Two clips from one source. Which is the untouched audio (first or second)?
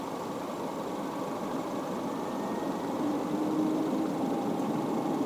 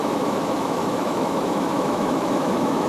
first